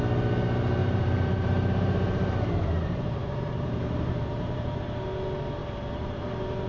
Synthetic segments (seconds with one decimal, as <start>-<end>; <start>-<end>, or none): 0.8-4.8; 5.6-6.2